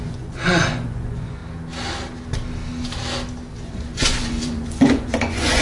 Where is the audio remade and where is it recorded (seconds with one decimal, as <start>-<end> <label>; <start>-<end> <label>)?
0.0-1.4 remade; 1.4-3.5 recorded; 3.5-5.6 remade